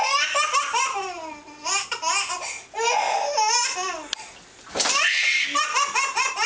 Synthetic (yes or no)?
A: no